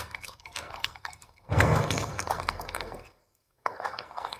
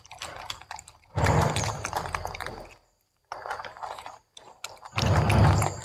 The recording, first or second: second